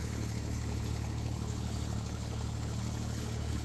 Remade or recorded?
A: remade